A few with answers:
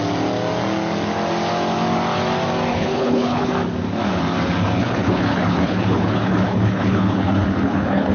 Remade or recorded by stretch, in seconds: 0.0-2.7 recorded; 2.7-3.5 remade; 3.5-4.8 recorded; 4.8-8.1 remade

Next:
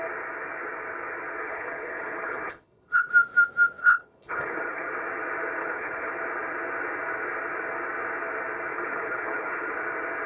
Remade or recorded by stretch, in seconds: 0.0-1.4 recorded; 1.4-3.1 remade; 3.1-3.8 recorded; 3.8-4.9 remade; 4.9-5.6 recorded; 5.6-6.1 remade; 6.1-8.7 recorded; 8.7-9.7 remade; 9.7-10.3 recorded

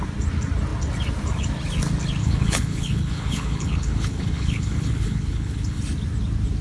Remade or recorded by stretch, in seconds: 0.0-2.2 recorded; 2.2-5.8 remade; 5.8-6.6 recorded

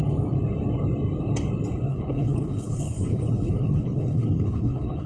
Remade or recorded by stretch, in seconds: 0.0-1.9 recorded; 1.9-5.1 remade

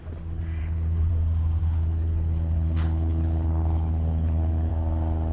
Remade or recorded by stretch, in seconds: 0.0-0.6 recorded; 0.6-1.1 remade; 1.1-1.6 recorded; 1.6-4.7 remade; 4.7-5.3 recorded

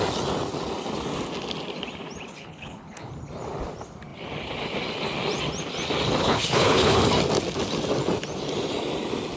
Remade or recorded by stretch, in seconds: 0.0-2.3 recorded; 2.3-3.1 remade; 3.1-6.2 recorded; 6.2-7.0 remade; 7.0-9.4 recorded

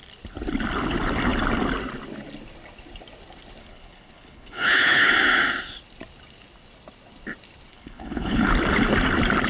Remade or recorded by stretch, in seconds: 0.0-3.6 recorded; 3.6-5.1 remade; 5.1-7.7 recorded; 7.7-8.5 remade; 8.5-9.5 recorded

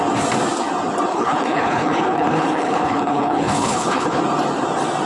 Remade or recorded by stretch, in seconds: 0.0-1.1 recorded; 1.1-4.2 remade; 4.2-5.1 recorded